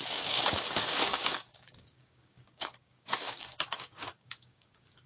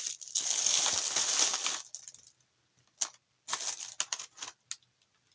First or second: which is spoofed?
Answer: first